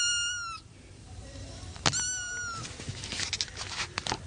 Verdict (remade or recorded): recorded